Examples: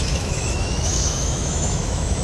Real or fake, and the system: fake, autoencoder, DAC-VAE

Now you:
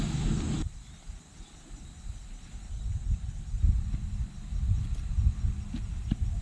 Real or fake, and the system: real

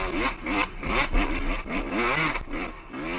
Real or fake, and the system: real